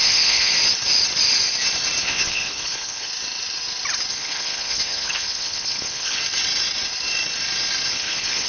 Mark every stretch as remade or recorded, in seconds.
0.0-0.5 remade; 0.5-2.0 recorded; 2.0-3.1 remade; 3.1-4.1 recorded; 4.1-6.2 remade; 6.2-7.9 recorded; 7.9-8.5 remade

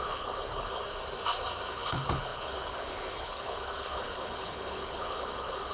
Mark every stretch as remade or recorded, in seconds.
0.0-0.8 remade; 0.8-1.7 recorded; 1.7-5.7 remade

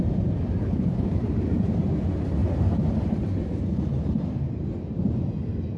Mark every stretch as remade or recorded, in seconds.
0.0-0.6 recorded; 0.6-1.2 remade; 1.2-5.8 recorded

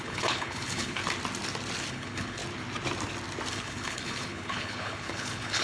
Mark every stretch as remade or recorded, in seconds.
0.0-1.0 remade; 1.0-1.9 recorded; 1.9-2.4 remade; 2.4-3.5 recorded; 3.5-5.6 remade

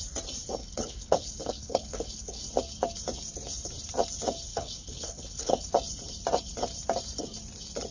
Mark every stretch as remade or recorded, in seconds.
0.0-0.6 recorded; 0.6-2.5 remade; 2.5-4.5 recorded; 4.5-5.7 remade; 5.7-7.9 recorded